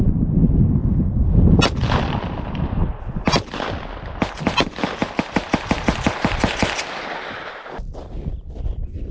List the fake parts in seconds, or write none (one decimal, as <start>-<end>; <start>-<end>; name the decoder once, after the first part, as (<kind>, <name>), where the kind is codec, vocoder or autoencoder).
0.8-3.2 (vocoder, BigVGAN v2); 5.0-9.1